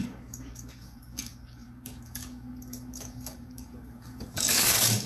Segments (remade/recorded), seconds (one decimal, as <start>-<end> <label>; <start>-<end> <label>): 0.0-5.1 remade